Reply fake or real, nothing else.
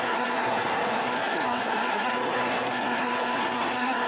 fake